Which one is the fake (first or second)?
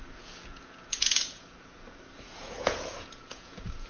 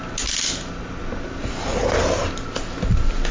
first